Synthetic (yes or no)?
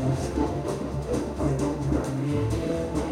yes